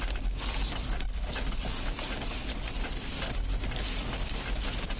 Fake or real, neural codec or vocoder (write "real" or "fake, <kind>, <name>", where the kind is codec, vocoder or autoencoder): real